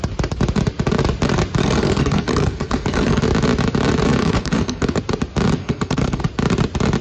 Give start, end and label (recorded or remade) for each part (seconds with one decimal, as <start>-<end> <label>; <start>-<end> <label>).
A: 0.0-1.6 recorded; 1.6-3.2 remade; 3.2-4.2 recorded; 4.2-5.0 remade; 5.0-5.6 recorded; 5.6-6.2 remade; 6.2-7.0 recorded

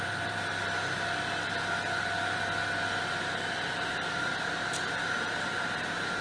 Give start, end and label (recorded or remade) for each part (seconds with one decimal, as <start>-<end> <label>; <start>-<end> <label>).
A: 0.0-0.5 remade; 0.5-3.6 recorded; 3.6-6.2 remade

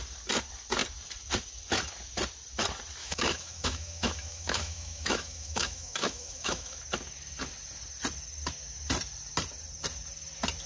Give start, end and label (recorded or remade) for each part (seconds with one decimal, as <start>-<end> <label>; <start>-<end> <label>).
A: 0.0-3.0 recorded; 3.0-6.8 remade; 6.8-10.7 recorded

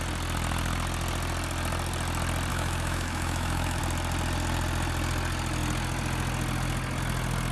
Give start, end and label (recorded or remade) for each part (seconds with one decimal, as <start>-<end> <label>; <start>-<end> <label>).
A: 0.0-2.5 recorded; 2.5-3.8 remade; 3.8-7.5 recorded